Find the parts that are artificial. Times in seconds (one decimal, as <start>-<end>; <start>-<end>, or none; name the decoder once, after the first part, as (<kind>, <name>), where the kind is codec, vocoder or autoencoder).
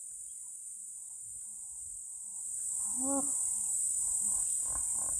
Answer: 0.0-0.9 (vocoder, BigVGAN v2); 1.3-4.4